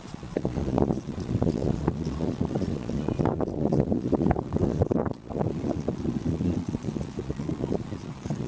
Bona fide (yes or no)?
no